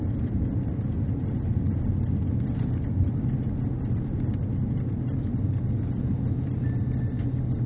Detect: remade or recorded recorded